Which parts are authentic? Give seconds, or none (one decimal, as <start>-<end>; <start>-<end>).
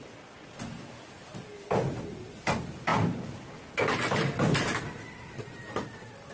0.0-6.3